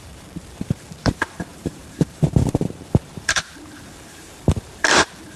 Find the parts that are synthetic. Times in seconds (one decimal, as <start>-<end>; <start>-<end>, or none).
0.0-5.4

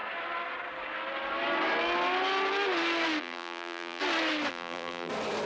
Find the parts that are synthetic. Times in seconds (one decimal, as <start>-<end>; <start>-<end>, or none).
3.2-4.0; 4.5-5.1